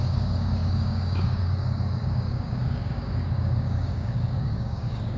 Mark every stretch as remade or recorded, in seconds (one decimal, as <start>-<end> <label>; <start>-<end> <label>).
0.0-5.2 remade